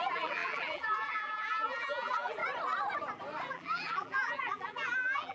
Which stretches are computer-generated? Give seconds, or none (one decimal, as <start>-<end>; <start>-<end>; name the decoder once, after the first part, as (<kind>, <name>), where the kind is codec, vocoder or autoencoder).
0.0-2.4 (vocoder, BigVGAN v2); 3.5-5.3